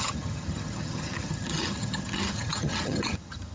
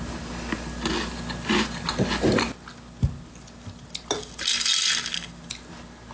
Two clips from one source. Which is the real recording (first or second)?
second